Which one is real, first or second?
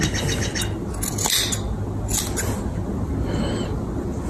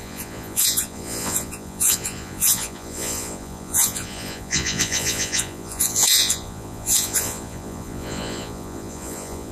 first